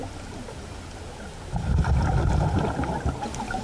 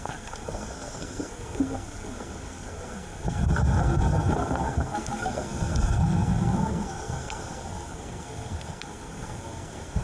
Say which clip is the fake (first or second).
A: second